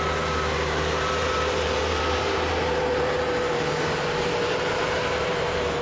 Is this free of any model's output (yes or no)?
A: no